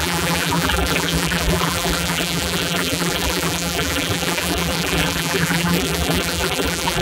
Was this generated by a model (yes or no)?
yes